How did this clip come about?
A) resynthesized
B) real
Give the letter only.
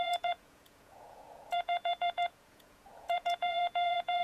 A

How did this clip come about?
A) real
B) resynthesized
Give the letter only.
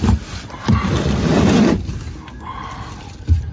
A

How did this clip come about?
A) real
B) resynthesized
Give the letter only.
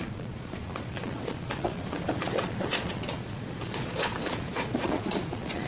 B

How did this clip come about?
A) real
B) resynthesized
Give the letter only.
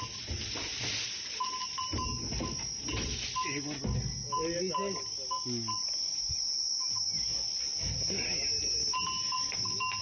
A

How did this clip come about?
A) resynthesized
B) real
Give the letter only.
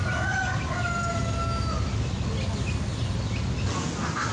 B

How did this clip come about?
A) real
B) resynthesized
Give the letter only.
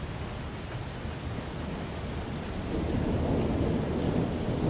A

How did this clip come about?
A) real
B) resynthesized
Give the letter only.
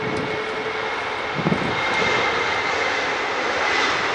A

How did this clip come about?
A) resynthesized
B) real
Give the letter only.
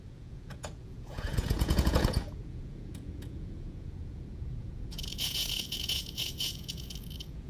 A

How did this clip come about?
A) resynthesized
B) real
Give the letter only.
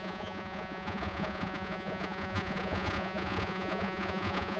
A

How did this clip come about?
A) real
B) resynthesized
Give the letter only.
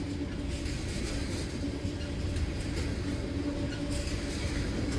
A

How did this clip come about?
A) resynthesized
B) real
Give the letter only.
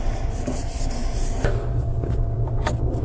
B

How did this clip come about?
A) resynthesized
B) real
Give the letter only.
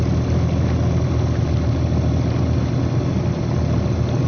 B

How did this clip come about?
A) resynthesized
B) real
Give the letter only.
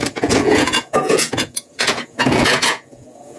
A